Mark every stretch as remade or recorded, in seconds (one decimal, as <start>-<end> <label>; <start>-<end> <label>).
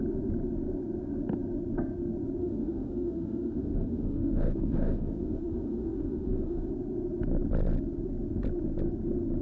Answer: 0.0-2.4 recorded; 2.4-6.7 remade; 6.7-9.4 recorded